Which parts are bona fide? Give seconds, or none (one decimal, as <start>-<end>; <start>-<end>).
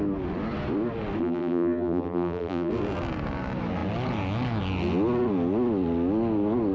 0.0-1.2; 2.7-6.7